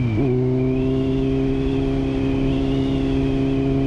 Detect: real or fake real